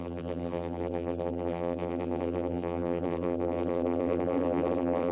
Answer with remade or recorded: remade